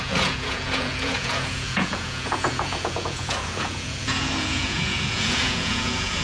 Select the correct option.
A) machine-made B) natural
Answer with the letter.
A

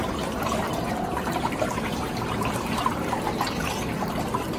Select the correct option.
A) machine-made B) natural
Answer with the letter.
A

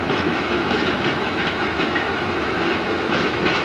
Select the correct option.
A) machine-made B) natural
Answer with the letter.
A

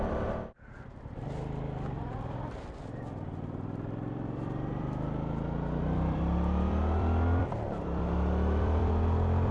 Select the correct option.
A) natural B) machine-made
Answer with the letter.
B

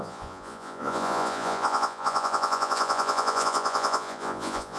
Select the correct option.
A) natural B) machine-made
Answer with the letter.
B